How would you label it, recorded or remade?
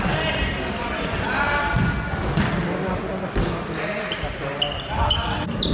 recorded